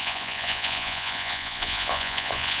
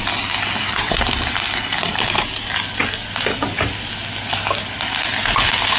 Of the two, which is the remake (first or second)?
first